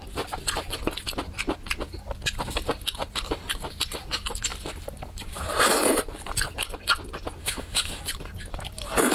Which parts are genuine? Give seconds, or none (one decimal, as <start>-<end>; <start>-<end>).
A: 0.0-7.4; 8.0-9.1